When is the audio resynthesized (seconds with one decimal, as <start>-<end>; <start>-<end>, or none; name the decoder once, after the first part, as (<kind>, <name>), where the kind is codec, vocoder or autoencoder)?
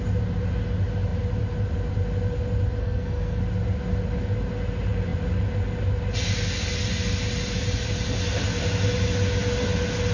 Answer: 2.8-3.4 (codec, SNAC)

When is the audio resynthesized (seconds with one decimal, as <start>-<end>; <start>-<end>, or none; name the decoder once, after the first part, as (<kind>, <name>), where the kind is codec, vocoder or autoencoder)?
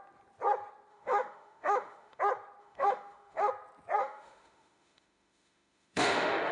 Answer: 0.9-2.2 (autoencoder, DAC-VAE); 2.6-3.5; 4.0-6.5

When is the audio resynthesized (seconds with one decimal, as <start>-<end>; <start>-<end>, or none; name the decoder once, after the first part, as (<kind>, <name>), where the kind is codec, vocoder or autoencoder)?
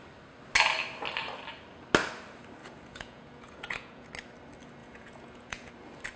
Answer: 2.6-4.1 (vocoder, Vocos); 4.8-5.7